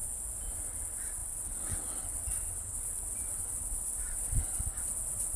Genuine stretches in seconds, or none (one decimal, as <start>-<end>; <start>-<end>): 0.0-0.6

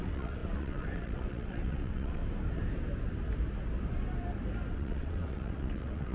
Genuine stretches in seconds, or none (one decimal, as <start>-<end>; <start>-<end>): 2.2-4.7

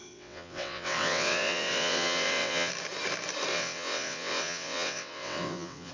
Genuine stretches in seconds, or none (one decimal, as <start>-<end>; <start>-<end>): 2.7-3.5

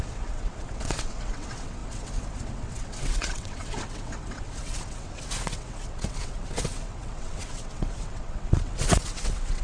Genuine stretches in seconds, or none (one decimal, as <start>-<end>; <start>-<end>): none

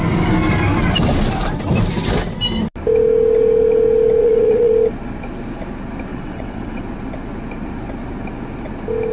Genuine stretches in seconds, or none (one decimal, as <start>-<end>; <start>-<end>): 0.0-4.2; 4.7-6.1; 6.8-9.1

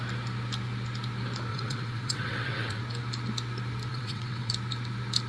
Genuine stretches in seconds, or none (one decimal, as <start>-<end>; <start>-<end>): 0.0-1.5; 2.8-3.9; 4.5-5.3

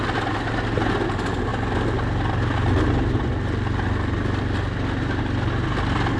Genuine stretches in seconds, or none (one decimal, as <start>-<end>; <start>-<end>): 0.0-6.2